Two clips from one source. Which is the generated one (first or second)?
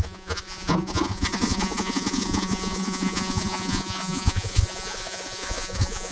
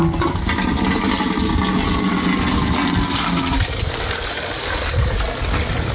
first